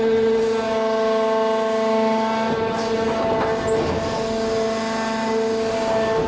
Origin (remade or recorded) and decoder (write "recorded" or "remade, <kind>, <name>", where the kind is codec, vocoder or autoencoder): recorded